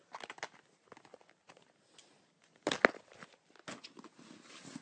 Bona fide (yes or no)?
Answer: yes